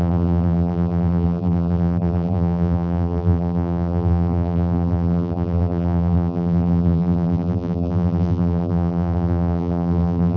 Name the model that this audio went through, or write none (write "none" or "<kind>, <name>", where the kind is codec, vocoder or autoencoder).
vocoder, BigVGAN v2